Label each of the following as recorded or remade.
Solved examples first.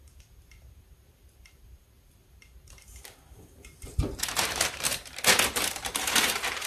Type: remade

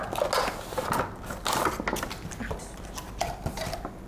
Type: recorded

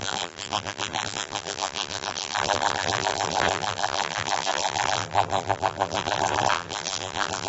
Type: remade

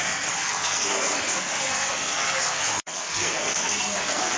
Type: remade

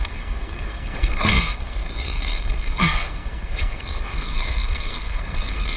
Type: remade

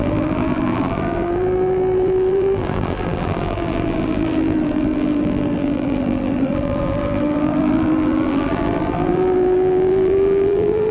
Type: remade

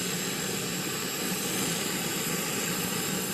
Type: recorded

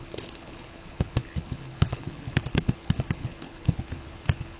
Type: remade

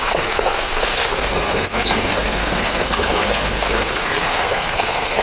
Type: remade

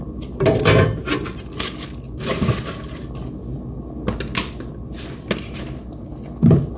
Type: recorded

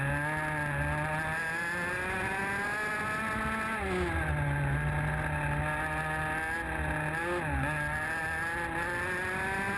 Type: recorded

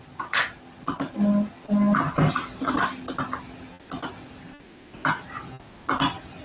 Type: recorded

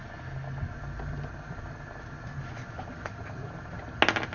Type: recorded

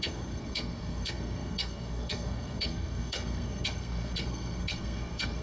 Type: remade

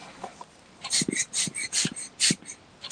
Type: remade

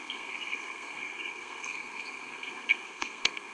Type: remade